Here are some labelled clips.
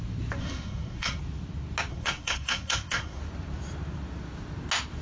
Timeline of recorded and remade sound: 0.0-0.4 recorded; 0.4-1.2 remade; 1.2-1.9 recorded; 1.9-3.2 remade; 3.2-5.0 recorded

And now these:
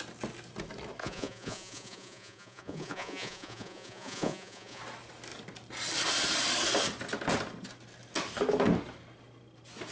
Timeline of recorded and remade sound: 0.0-1.0 recorded; 1.0-4.8 remade; 4.8-9.9 recorded

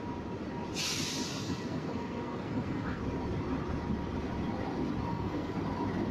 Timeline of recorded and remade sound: 0.0-1.4 recorded; 1.4-3.0 remade; 3.0-5.1 recorded; 5.1-5.6 remade; 5.6-6.1 recorded

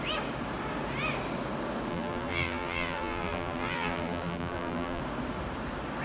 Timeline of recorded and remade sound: 0.0-1.9 recorded; 1.9-5.0 remade; 5.0-6.0 recorded

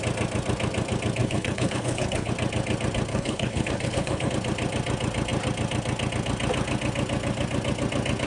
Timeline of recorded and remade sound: 0.0-1.2 recorded; 1.2-2.3 remade; 2.3-3.1 recorded; 3.1-4.3 remade; 4.3-8.3 recorded